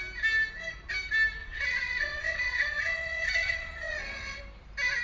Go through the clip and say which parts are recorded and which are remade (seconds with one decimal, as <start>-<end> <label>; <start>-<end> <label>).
0.0-1.4 recorded; 1.4-4.4 remade; 4.4-5.0 recorded